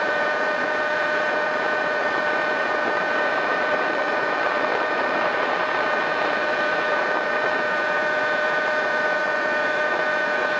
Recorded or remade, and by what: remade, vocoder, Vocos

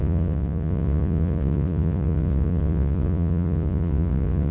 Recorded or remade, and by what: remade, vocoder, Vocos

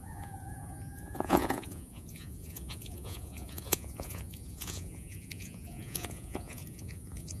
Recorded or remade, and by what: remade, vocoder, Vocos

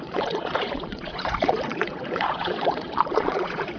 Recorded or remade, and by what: remade, vocoder, Vocos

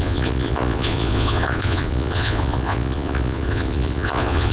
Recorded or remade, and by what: remade, vocoder, Vocos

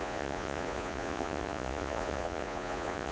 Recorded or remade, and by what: remade, vocoder, Vocos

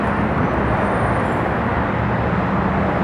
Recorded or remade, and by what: recorded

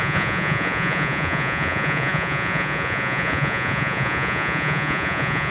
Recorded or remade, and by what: remade, vocoder, Vocos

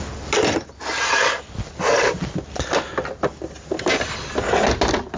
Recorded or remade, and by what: recorded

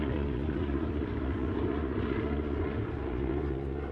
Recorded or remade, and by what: remade, vocoder, Vocos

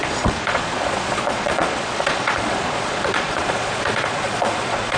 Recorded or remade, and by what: remade, vocoder, Vocos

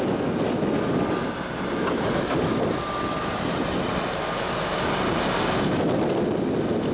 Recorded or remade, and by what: recorded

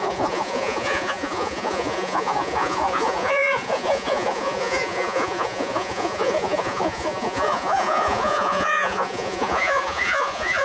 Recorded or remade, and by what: remade, vocoder, Vocos